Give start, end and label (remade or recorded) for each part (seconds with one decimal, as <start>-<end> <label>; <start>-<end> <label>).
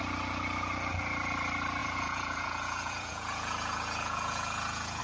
0.0-1.8 recorded; 1.8-5.0 remade